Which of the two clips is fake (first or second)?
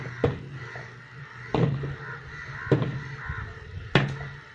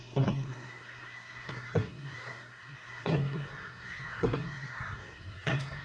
second